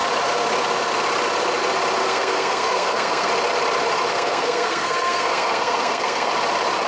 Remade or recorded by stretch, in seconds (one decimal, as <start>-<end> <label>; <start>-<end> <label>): 0.0-2.0 recorded; 2.0-3.3 remade; 3.3-4.1 recorded; 4.1-6.3 remade; 6.3-6.9 recorded